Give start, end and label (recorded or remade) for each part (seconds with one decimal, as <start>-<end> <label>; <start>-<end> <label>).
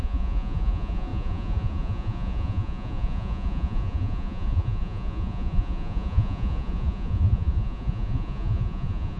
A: 0.0-9.2 remade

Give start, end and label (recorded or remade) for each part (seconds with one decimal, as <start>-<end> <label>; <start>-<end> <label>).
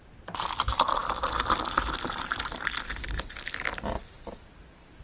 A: 0.0-5.0 recorded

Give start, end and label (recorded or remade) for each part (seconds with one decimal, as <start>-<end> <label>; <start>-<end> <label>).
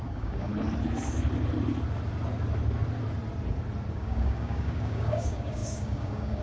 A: 0.0-0.5 remade; 0.5-3.9 recorded; 3.9-6.4 remade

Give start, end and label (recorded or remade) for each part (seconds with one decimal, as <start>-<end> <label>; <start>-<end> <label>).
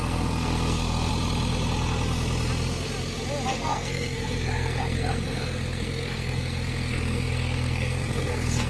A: 0.0-1.1 remade; 1.1-3.5 recorded; 3.5-8.7 remade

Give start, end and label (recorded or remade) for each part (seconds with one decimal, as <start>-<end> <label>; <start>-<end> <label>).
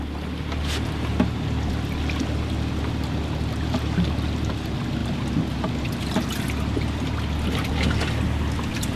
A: 0.0-9.0 recorded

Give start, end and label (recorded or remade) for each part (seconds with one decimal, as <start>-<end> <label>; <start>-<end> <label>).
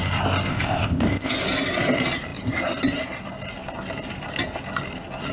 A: 0.0-0.5 recorded; 0.5-1.3 remade; 1.3-5.3 recorded